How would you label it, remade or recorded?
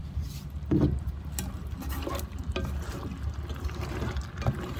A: recorded